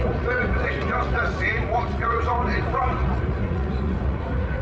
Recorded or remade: remade